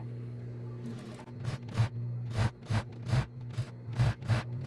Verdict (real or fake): real